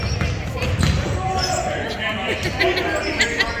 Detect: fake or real real